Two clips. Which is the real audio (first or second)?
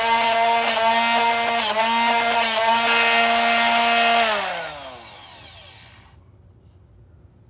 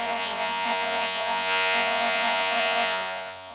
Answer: first